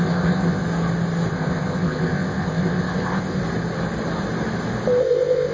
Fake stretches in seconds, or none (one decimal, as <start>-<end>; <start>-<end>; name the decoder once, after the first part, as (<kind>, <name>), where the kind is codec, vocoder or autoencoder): 0.0-0.6 (codec, ZipCodec); 1.3-3.4; 5.0-5.5